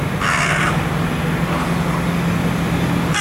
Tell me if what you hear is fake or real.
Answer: real